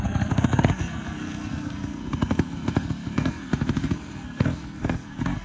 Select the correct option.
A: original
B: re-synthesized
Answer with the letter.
B